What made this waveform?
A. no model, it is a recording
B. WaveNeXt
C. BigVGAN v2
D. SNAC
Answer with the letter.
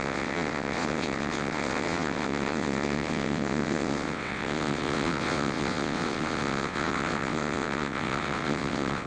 B